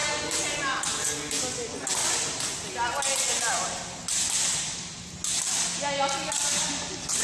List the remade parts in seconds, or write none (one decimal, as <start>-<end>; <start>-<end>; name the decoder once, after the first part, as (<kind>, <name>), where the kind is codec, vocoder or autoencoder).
none

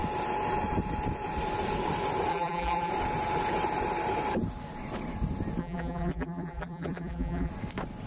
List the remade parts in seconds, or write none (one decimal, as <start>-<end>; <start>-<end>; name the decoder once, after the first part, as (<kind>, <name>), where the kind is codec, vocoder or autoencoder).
2.3-2.9 (vocoder, BigVGAN v2); 5.6-7.5

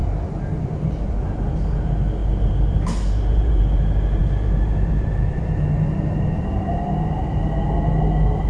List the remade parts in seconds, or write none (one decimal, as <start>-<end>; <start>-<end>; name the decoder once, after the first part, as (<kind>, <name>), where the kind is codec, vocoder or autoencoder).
2.2-3.8 (vocoder, BigVGAN v2); 4.2-5.9

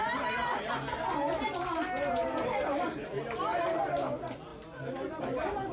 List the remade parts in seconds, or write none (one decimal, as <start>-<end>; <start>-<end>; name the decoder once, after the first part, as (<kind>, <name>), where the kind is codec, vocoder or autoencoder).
0.0-0.5 (vocoder, BigVGAN v2); 2.1-5.7

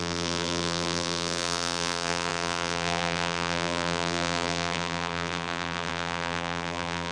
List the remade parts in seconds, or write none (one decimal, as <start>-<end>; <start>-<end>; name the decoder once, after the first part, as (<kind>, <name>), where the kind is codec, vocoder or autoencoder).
0.0-7.1 (vocoder, BigVGAN v2)

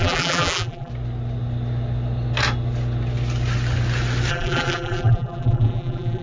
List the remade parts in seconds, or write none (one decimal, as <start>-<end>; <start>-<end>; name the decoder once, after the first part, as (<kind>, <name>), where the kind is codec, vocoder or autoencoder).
0.0-0.9 (vocoder, BigVGAN v2); 4.3-6.2

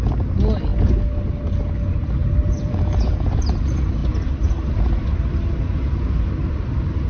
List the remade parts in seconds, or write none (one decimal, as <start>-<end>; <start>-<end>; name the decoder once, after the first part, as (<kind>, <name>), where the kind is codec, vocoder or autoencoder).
2.2-3.4 (vocoder, BigVGAN v2)